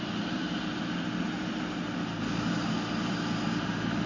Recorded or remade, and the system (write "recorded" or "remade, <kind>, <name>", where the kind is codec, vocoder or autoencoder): recorded